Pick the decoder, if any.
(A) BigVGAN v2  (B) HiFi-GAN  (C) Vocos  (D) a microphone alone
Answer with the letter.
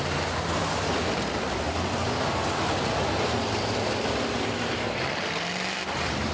D